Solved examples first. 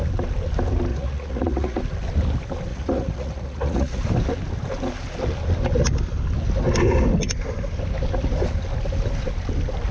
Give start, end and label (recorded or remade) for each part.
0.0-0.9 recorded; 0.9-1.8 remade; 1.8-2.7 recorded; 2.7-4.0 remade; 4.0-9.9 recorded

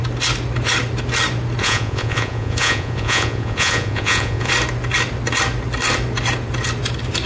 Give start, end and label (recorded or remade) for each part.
0.0-1.6 recorded; 1.6-4.5 remade; 4.5-7.3 recorded

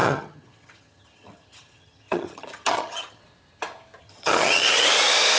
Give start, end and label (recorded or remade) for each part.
0.0-3.2 remade; 3.2-4.0 recorded; 4.0-4.9 remade; 4.9-5.4 recorded